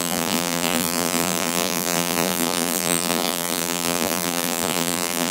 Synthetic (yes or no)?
yes